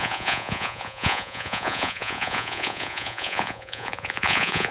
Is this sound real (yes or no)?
no